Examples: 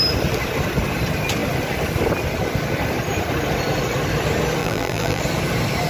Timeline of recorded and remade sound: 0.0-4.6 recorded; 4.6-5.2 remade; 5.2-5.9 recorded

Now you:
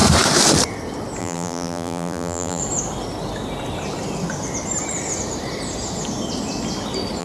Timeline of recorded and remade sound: 0.0-1.2 recorded; 1.2-2.6 remade; 2.6-7.2 recorded

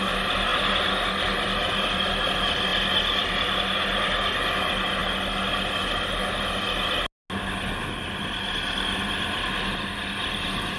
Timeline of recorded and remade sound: 0.0-10.8 recorded